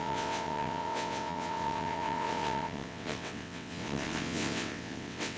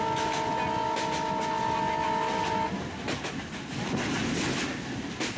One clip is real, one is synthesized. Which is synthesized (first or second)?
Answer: first